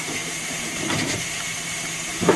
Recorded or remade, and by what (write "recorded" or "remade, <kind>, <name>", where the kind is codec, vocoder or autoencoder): remade, vocoder, BigVGAN v2